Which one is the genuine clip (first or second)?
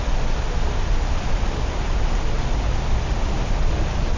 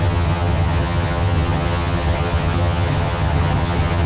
first